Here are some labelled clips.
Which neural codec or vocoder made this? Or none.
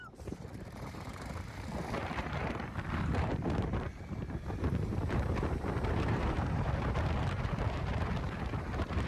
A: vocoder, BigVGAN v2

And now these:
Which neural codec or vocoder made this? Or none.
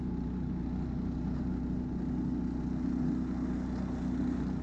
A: none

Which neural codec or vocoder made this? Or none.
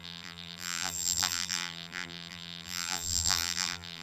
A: vocoder, BigVGAN v2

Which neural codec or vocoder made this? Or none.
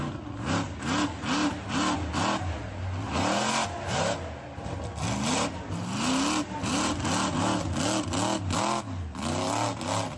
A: none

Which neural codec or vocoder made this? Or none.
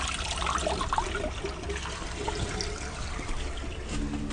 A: none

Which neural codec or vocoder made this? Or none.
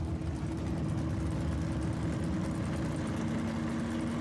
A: none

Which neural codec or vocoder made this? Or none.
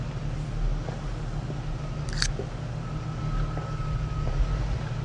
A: none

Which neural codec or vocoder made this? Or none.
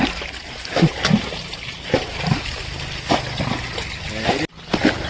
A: none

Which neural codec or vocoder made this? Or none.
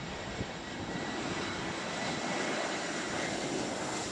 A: vocoder, BigVGAN v2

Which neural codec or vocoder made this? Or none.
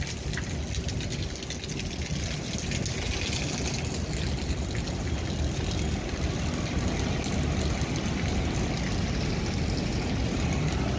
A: none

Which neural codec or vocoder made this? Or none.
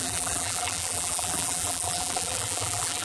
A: vocoder, BigVGAN v2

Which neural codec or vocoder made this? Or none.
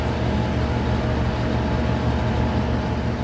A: none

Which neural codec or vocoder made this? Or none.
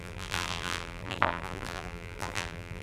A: vocoder, BigVGAN v2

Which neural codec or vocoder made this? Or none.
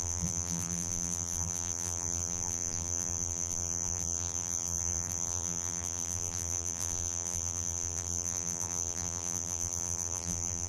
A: vocoder, BigVGAN v2